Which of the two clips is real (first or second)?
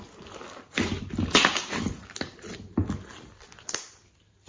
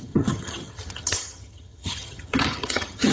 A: first